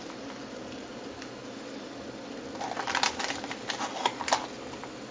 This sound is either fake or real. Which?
real